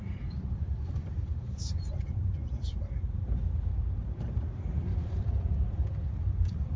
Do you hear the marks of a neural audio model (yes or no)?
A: yes